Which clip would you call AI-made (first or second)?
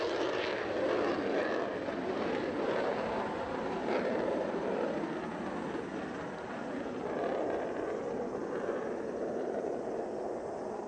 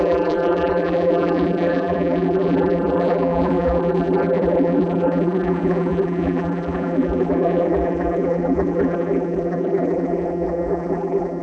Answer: second